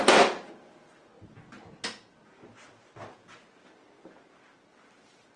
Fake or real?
real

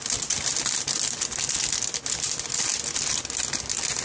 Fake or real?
real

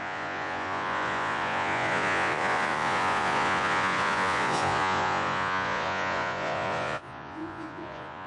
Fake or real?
fake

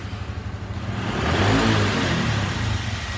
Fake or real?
real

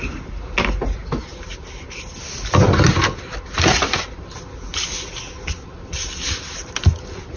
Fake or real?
real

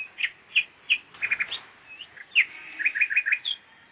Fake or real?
real